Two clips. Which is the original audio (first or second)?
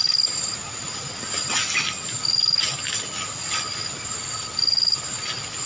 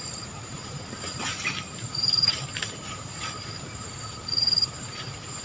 first